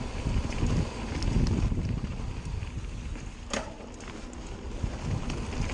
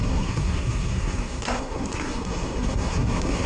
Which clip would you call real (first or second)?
first